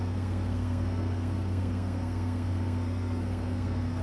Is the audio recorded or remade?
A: remade